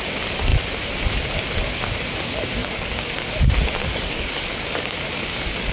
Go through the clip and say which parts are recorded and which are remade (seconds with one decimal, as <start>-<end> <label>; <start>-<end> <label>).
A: 0.0-2.6 recorded; 2.6-3.3 remade; 3.3-3.8 recorded; 3.8-5.7 remade